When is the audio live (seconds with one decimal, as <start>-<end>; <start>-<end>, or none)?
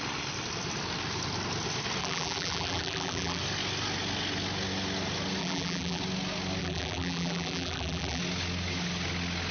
0.0-2.0; 3.4-5.4; 6.0-6.6; 8.2-9.5